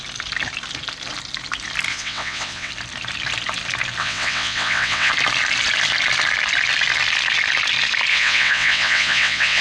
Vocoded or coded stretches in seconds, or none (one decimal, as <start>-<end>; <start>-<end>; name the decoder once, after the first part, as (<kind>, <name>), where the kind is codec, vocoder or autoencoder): 1.9-2.7 (vocoder, WaveNeXt); 4.0-5.1; 8.1-9.6